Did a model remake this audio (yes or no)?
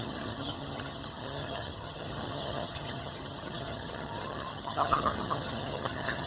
yes